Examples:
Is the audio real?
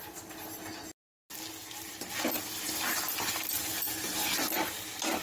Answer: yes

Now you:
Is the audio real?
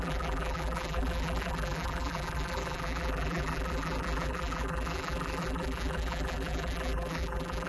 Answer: no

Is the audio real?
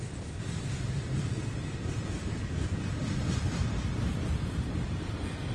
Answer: no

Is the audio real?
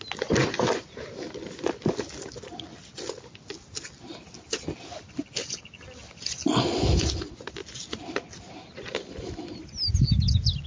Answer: yes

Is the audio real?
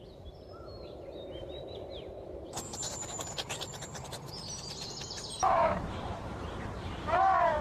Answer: no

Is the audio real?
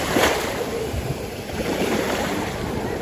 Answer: no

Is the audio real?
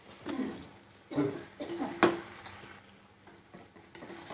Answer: yes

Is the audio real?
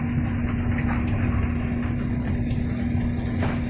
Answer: yes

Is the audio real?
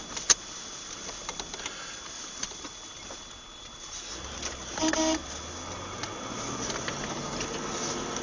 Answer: yes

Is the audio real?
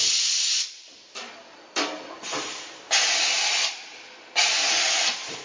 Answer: no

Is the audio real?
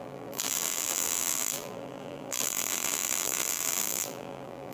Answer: no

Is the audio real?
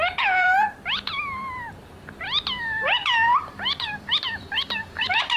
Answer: no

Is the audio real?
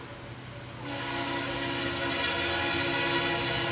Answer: yes